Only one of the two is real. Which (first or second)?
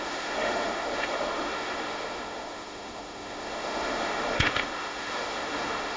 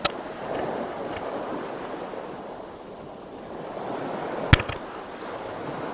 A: second